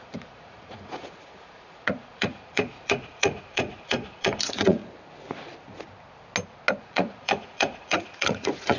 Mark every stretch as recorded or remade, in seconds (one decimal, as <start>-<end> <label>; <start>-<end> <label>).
0.0-4.8 remade; 4.8-6.8 recorded; 6.8-8.8 remade